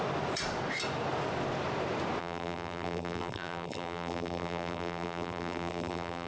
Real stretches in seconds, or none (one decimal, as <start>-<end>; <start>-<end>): 0.0-2.2